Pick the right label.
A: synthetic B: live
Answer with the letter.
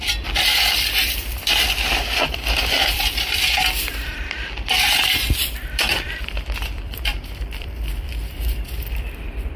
A